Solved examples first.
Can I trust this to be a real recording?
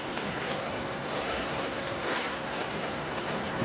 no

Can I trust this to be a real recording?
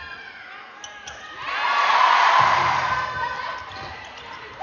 yes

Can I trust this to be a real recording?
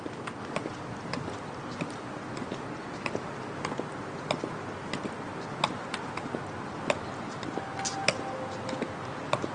yes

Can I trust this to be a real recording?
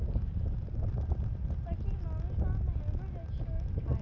yes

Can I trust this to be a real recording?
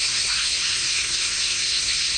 no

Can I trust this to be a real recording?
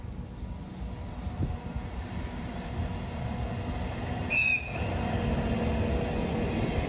yes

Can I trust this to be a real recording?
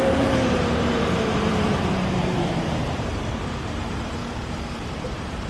no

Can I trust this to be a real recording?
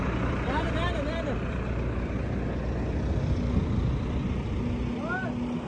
yes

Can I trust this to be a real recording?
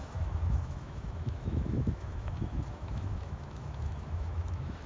no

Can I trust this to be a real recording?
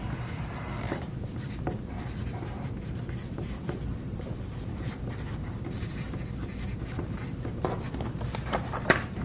no